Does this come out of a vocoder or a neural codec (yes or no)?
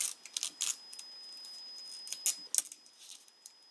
no